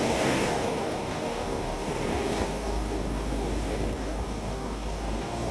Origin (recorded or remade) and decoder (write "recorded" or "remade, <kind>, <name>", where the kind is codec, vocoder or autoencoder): remade, codec, DAC